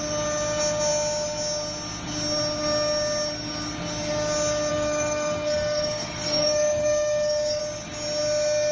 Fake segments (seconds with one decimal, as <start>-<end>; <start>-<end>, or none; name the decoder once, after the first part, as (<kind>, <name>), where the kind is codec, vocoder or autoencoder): 4.7-7.6 (codec, DAC)